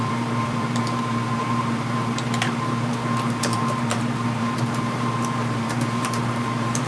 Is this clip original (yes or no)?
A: no